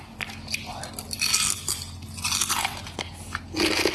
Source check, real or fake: real